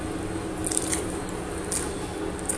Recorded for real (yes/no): yes